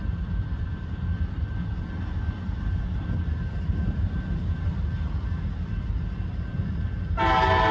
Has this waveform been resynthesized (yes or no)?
no